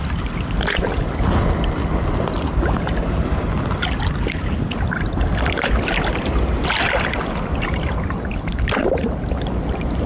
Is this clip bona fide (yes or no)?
yes